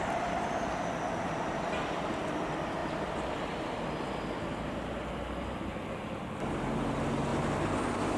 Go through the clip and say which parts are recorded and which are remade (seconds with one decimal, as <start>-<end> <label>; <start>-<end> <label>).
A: 0.0-8.2 recorded